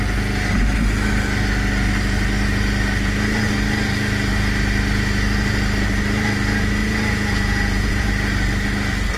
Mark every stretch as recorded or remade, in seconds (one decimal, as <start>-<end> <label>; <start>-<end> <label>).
0.0-6.8 recorded; 6.8-8.0 remade; 8.0-9.2 recorded